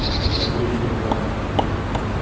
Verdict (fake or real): real